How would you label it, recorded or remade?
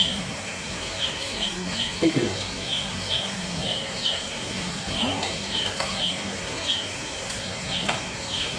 remade